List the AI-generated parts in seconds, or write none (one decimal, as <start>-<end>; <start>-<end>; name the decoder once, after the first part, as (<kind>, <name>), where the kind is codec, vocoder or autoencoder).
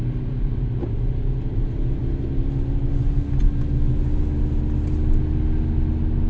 none